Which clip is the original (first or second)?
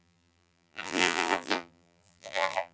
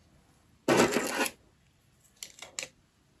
second